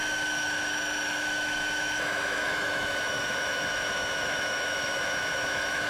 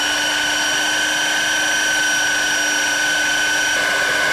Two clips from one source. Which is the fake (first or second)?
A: first